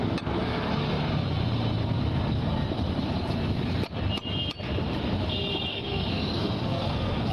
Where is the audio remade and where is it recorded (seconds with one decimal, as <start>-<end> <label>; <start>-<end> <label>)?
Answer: 0.0-5.7 recorded; 5.7-7.3 remade